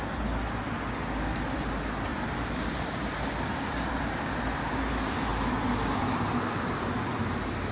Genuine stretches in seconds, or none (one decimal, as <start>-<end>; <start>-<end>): 0.0-2.1; 4.6-5.3; 7.0-7.7